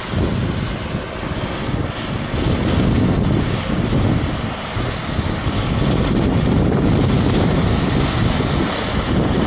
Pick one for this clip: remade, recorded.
recorded